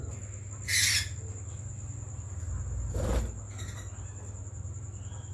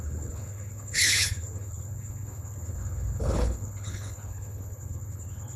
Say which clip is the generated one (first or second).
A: second